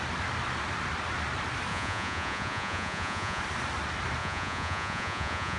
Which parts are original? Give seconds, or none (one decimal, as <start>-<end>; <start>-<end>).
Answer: 0.0-1.7; 3.4-4.2